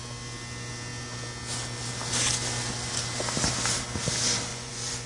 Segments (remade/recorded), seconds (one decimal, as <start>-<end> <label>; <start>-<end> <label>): 0.0-4.5 recorded; 4.5-5.1 remade